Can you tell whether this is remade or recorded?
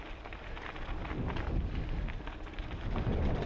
recorded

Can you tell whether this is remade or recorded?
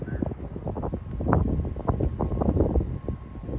recorded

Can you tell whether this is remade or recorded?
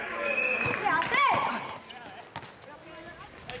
recorded